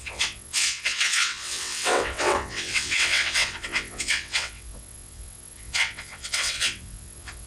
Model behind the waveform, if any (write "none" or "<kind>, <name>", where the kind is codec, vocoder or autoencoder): vocoder, WaveNeXt